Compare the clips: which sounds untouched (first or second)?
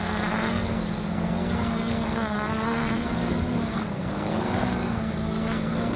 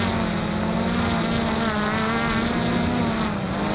second